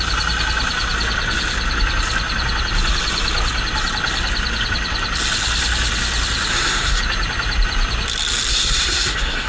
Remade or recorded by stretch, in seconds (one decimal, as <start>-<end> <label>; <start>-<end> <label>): 0.0-6.5 recorded; 6.5-7.0 remade; 7.0-8.5 recorded; 8.5-9.5 remade